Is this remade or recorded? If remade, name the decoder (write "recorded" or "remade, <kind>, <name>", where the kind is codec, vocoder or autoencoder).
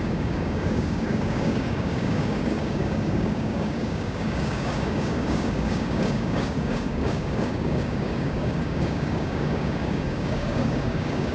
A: remade, codec, DAC